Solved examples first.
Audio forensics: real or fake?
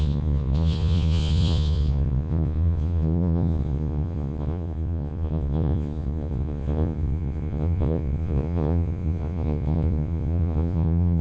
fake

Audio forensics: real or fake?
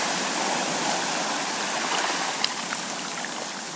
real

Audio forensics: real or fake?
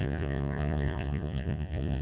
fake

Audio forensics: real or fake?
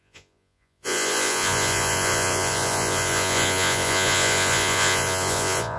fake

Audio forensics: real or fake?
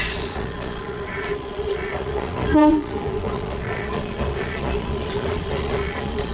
fake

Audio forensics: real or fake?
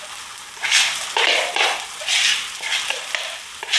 real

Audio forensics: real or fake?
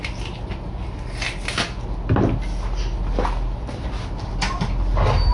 real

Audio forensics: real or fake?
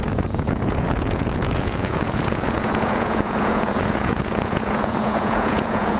fake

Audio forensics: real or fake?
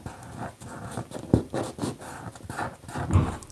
real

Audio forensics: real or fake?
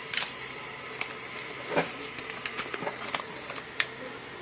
real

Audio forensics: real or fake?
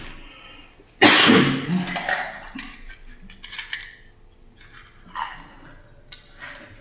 real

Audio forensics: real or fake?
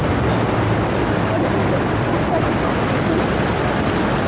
real